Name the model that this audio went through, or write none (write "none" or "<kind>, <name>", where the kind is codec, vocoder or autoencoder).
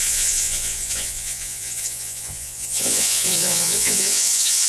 vocoder, Vocos